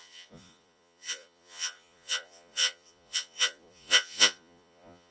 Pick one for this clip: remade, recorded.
remade